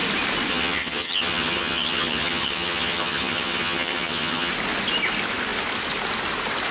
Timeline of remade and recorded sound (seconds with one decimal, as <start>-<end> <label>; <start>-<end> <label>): 0.0-0.5 recorded; 0.5-4.5 remade; 4.5-6.7 recorded